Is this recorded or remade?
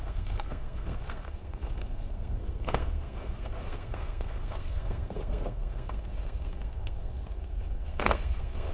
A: remade